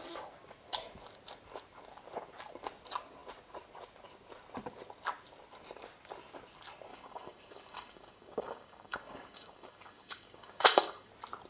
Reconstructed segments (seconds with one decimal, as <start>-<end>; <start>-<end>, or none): 6.9-11.1